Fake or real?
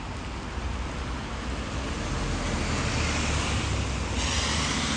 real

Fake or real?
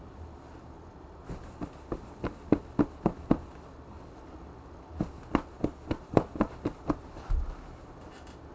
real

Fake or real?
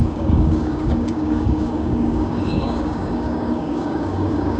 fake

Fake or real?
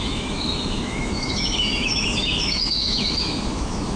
fake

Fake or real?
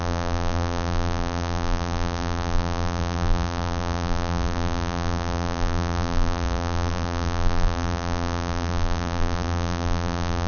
fake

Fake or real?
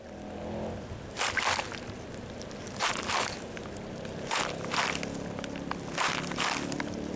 real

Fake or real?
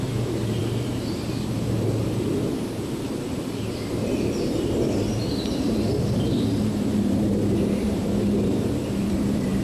fake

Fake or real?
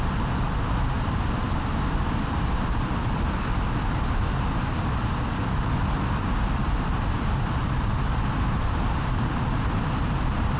real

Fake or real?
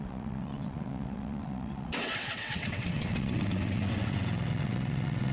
fake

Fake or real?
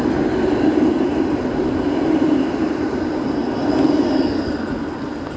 real